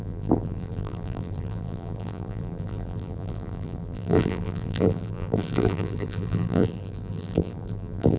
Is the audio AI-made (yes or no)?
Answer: yes